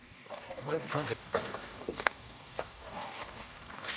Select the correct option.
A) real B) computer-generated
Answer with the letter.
B